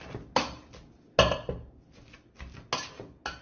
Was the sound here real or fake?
real